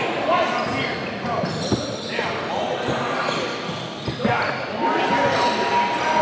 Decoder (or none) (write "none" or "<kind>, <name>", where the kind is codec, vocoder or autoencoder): none